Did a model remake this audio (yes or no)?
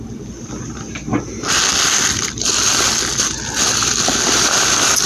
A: no